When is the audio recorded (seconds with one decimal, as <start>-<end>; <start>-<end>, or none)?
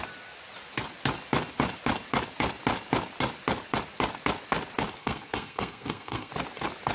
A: 0.0-5.0; 6.3-6.9